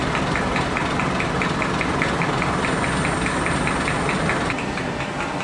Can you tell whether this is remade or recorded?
recorded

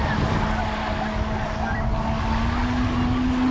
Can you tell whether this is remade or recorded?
recorded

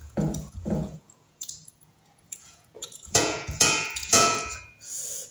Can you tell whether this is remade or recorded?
remade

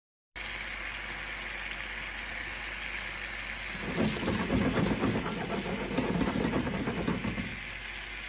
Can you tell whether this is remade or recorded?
recorded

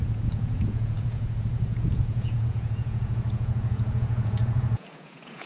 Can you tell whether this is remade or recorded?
remade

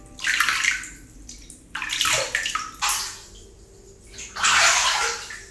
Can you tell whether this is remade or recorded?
recorded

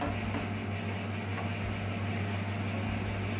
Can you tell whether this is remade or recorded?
recorded